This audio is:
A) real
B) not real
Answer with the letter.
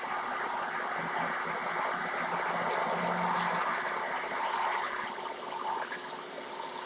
A